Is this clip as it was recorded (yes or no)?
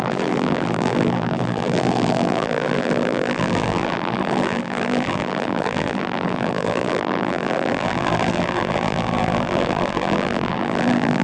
no